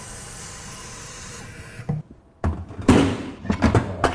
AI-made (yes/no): no